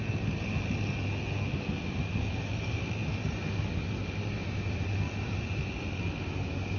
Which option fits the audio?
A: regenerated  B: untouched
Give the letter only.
B